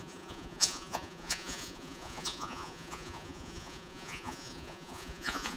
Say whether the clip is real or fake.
fake